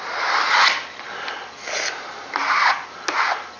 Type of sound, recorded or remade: recorded